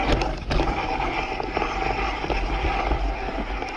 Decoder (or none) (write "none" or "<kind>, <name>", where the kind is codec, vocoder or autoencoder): none